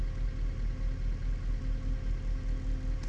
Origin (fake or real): real